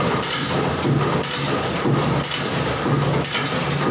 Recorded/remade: recorded